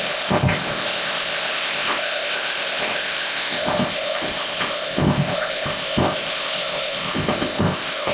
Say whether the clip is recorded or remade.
remade